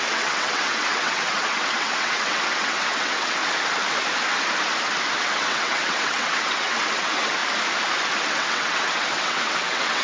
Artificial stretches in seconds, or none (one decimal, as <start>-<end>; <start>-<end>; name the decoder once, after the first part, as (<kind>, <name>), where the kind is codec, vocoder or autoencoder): 0.0-3.4 (vocoder, WaveNeXt); 5.2-7.4; 8.2-10.0